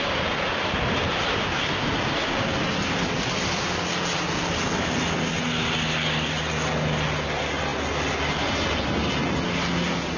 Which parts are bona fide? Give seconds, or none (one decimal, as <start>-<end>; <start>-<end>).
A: 0.0-10.2